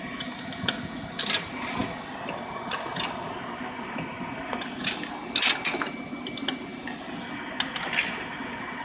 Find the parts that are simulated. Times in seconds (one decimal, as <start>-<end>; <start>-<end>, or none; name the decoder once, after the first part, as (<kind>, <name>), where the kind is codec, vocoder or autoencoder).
none